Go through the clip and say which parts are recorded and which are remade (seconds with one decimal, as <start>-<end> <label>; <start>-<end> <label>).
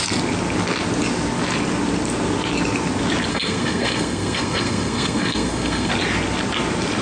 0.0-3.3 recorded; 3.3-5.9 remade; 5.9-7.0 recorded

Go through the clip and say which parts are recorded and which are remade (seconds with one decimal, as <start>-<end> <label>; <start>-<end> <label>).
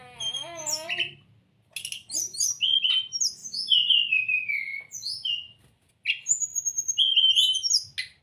0.0-8.2 recorded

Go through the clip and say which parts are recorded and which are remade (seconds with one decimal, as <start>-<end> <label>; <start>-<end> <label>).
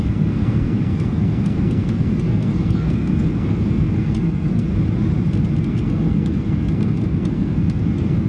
0.0-4.7 remade; 4.7-5.6 recorded; 5.6-8.3 remade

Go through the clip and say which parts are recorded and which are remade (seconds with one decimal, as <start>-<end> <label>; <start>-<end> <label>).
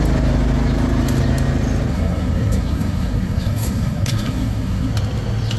0.0-1.9 recorded; 1.9-4.9 remade; 4.9-5.6 recorded